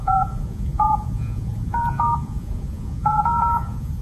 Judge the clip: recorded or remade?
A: remade